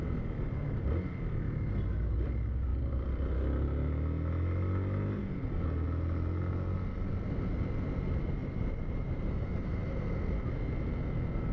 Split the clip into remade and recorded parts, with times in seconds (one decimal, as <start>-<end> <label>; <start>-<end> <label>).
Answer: 0.0-8.4 recorded; 8.4-10.1 remade; 10.1-11.5 recorded